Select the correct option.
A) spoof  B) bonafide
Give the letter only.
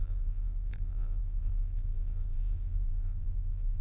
A